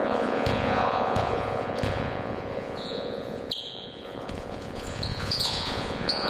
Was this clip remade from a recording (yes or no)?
yes